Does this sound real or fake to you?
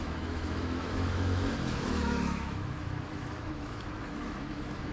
fake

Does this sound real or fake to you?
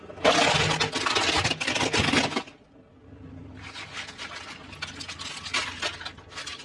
real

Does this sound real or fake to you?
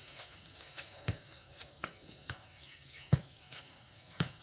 fake